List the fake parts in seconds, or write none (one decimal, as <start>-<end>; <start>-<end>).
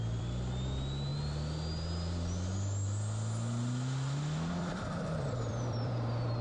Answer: 0.0-1.1; 4.5-6.4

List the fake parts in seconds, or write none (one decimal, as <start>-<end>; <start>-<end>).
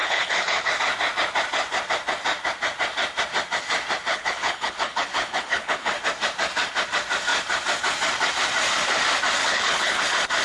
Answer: 0.0-0.7; 4.1-5.9; 9.4-10.0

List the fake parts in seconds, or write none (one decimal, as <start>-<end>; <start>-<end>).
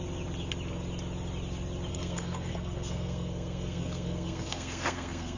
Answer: 1.9-5.4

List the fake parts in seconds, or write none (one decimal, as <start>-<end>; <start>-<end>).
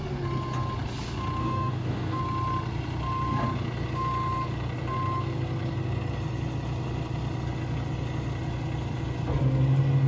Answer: 1.4-2.2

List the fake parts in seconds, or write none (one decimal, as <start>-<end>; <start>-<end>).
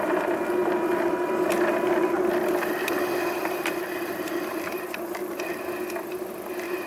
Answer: 3.4-5.5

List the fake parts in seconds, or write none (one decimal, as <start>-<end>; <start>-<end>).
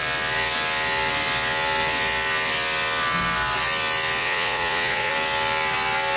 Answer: 4.2-5.1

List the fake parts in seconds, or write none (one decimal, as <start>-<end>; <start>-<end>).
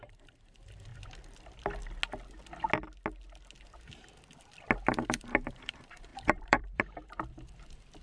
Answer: 0.0-0.9; 4.9-8.0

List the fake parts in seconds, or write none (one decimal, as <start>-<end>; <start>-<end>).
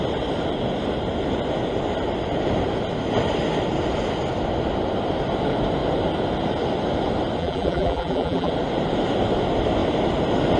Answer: 7.4-8.5